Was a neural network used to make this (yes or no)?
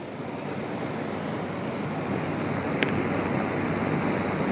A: no